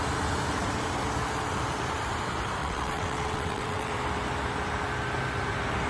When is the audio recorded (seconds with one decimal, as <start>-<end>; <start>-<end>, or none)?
0.0-2.6; 3.9-5.9